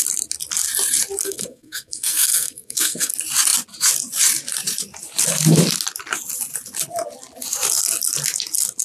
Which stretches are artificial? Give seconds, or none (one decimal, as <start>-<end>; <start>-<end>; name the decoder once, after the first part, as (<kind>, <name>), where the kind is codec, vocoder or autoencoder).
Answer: 1.2-3.1 (codec, SNAC)